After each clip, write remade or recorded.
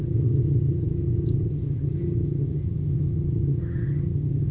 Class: remade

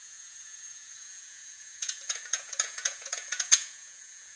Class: remade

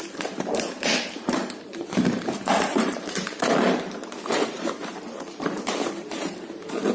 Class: remade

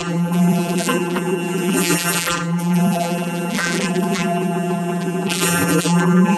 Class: remade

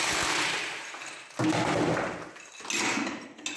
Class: recorded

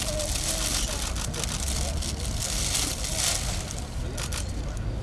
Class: recorded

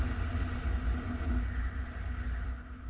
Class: recorded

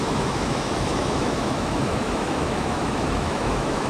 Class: remade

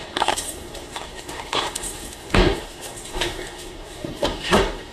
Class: remade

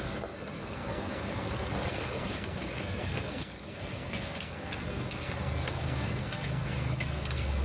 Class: remade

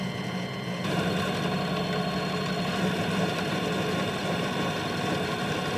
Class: recorded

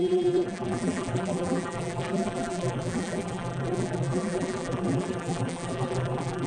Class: remade